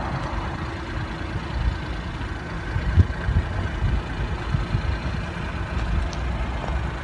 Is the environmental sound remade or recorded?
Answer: recorded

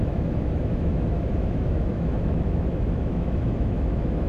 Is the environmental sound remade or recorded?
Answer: remade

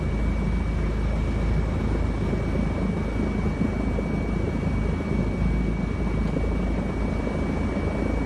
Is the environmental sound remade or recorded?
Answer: recorded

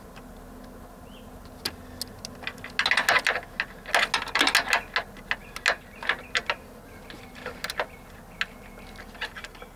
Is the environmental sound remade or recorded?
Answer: recorded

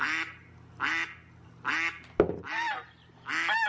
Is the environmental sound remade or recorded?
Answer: recorded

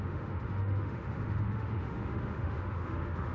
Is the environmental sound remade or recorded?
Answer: remade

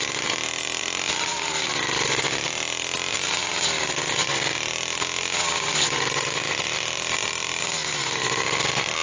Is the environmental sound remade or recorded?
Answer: recorded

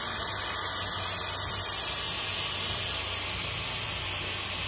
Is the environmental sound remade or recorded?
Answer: recorded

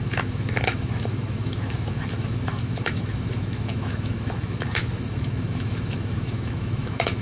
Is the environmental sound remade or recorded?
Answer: remade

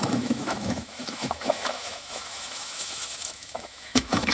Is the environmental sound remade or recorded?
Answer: remade